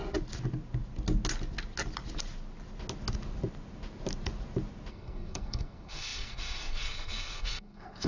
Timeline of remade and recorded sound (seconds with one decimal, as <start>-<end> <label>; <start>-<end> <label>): 0.0-4.9 recorded; 4.9-8.1 remade